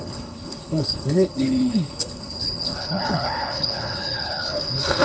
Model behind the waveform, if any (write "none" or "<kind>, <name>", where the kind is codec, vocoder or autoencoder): codec, HILCodec